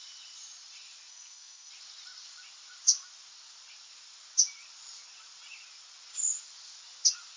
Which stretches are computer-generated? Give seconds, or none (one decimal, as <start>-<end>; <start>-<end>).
1.1-1.7